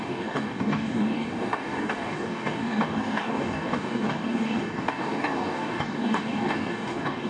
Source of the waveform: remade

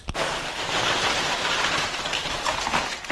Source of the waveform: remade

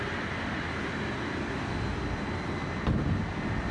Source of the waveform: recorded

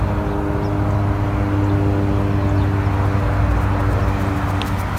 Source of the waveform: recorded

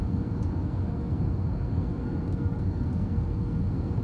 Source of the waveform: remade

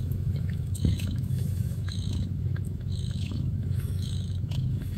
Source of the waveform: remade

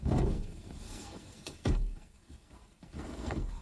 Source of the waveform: remade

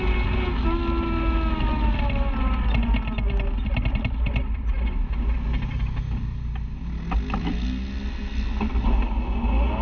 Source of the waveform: recorded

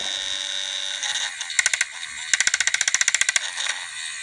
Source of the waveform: recorded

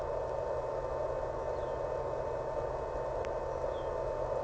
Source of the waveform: recorded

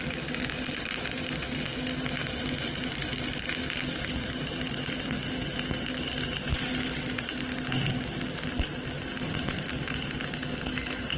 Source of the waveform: recorded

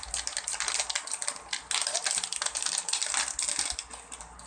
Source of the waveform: recorded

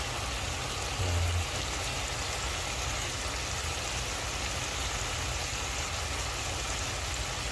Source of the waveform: recorded